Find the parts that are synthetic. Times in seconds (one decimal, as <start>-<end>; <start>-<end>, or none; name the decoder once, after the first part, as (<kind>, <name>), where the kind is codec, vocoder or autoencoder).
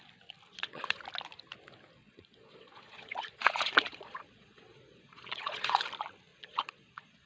0.5-1.0 (vocoder, Vocos); 2.0-5.8; 6.3-7.3